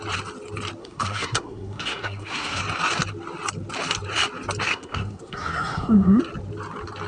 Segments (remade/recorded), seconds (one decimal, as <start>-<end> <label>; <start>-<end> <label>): 0.0-0.8 recorded; 0.8-2.6 remade; 2.6-4.7 recorded; 4.7-6.2 remade; 6.2-7.1 recorded